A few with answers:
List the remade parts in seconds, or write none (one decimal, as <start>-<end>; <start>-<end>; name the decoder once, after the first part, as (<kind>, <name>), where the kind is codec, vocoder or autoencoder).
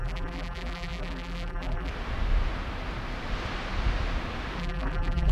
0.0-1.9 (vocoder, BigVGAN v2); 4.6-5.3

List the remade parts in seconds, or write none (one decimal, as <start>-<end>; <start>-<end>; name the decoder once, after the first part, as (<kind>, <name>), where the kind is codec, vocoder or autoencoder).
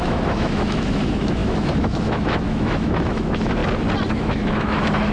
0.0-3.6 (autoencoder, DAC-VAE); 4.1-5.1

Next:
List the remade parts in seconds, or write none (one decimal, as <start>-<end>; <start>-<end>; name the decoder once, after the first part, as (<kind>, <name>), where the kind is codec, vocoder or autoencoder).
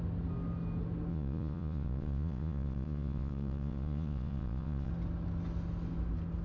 1.1-4.9 (vocoder, Vocos)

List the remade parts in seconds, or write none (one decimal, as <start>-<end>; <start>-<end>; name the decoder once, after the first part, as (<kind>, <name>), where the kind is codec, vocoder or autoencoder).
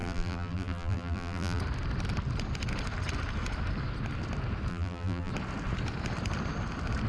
0.0-1.6 (vocoder, BigVGAN v2); 4.7-5.3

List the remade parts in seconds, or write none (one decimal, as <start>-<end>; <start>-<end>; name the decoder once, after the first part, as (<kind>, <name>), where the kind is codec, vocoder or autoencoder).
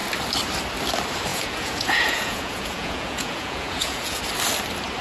1.3-4.2 (vocoder, Vocos)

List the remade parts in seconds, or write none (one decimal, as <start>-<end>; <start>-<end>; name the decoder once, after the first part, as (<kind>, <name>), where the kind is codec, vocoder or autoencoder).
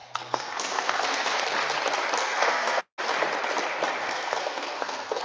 0.0-1.4 (codec, SNAC); 2.2-2.8; 4.0-5.2